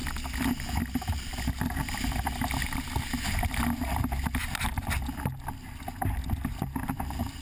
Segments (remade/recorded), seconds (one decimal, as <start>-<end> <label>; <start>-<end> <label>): 0.0-7.4 recorded